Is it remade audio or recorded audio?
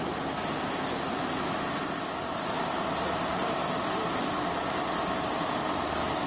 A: recorded